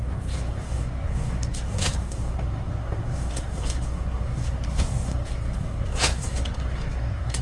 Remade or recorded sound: remade